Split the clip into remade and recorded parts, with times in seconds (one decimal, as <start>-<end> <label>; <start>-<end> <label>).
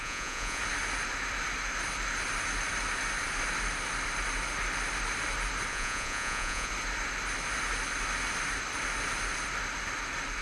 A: 0.0-0.6 remade; 0.6-5.7 recorded; 5.7-6.7 remade; 6.7-10.4 recorded